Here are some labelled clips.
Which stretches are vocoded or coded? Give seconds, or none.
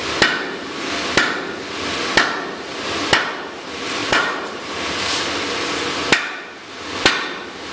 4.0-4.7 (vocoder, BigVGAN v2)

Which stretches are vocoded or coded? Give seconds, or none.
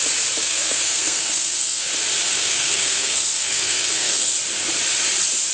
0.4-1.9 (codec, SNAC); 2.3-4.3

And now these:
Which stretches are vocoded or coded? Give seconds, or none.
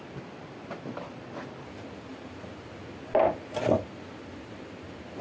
none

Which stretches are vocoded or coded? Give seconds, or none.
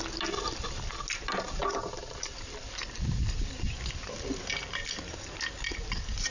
none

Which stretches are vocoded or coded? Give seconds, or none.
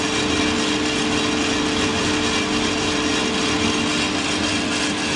none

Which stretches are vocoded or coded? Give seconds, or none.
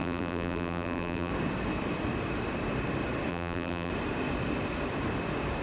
0.0-1.3 (vocoder, BigVGAN v2); 3.3-3.9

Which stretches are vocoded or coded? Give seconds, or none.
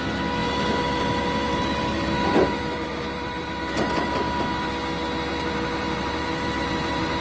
0.4-4.7 (vocoder, BigVGAN v2); 5.3-7.2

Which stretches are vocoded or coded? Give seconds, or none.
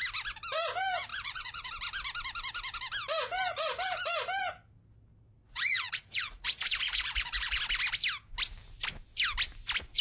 1.1-1.7 (vocoder, Vocos); 5.4-7.6